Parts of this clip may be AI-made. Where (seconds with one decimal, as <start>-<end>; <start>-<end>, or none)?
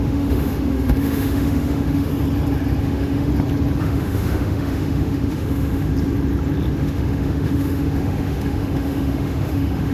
0.0-2.1; 2.8-3.3; 3.8-5.9; 6.8-9.9